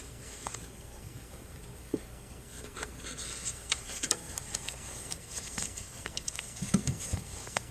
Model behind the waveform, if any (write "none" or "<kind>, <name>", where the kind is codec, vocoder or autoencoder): codec, SNAC